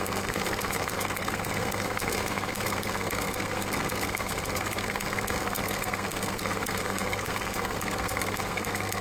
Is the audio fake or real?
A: fake